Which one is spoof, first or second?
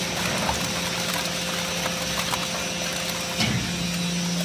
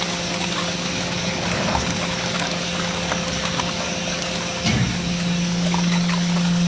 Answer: second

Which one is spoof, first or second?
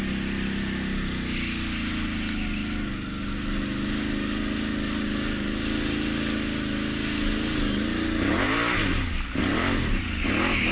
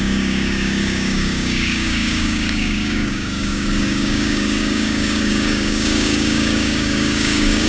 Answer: second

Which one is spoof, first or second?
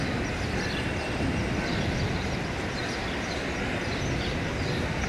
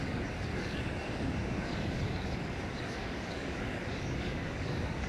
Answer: second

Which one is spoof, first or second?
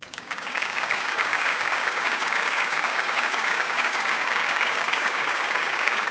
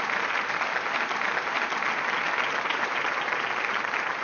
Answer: first